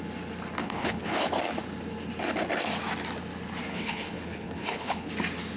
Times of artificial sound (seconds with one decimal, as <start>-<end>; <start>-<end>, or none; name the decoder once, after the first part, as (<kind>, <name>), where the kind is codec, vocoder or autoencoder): 0.6-1.2 (codec, HILCodec); 3.7-5.1